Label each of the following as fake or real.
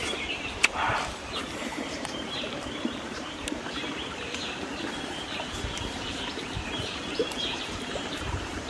fake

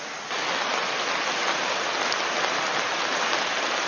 real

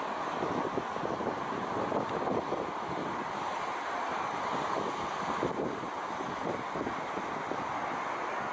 real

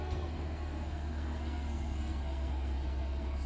fake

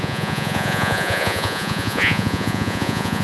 fake